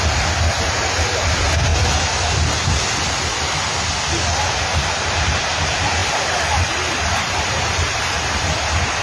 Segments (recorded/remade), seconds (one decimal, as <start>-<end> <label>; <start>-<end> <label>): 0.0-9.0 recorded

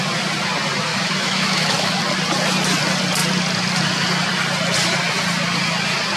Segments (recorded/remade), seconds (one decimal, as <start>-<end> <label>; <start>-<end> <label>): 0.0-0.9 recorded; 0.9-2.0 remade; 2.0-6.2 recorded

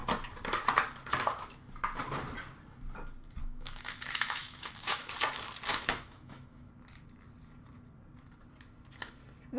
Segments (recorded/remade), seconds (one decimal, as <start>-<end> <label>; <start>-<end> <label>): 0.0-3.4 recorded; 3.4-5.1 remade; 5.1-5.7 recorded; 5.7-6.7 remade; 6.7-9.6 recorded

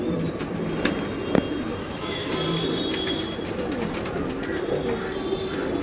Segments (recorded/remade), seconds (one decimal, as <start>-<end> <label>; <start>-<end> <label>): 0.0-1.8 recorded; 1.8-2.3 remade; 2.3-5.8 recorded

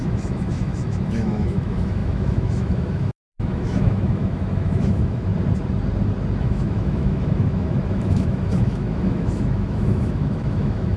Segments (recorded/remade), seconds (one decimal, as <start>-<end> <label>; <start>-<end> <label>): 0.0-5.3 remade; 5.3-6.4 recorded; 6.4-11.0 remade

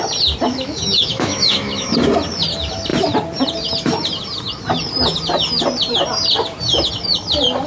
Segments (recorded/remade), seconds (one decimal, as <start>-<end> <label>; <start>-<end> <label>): 0.0-0.5 recorded; 0.5-1.9 remade; 1.9-7.7 recorded

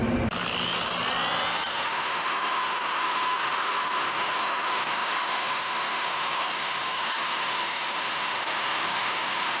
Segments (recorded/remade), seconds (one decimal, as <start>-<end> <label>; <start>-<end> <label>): 0.0-1.7 recorded; 1.7-9.6 remade

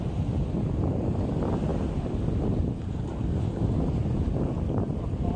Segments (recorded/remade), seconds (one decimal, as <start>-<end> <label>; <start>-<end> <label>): 0.0-5.4 recorded